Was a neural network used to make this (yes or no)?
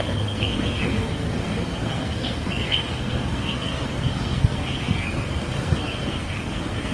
yes